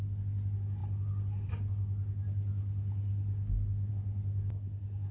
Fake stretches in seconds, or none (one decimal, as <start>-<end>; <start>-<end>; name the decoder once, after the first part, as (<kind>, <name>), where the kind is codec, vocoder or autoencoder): none